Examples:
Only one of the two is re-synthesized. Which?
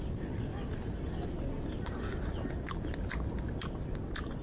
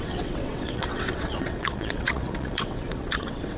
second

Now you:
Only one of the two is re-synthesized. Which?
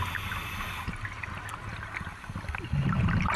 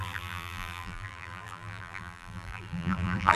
second